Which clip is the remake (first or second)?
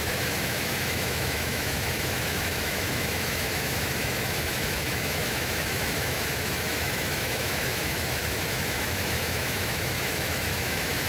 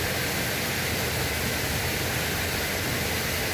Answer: first